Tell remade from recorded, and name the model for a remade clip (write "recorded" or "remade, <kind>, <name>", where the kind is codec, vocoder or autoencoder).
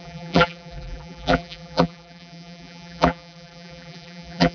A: remade, vocoder, BigVGAN v2